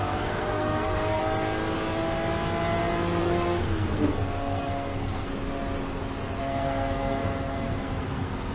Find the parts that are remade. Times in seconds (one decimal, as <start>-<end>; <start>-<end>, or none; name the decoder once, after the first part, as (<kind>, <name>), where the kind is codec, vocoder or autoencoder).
0.0-1.2 (codec, SNAC); 3.2-5.3; 6.4-8.5